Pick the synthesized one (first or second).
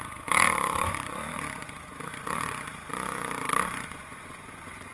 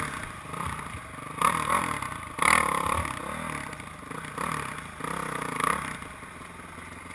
first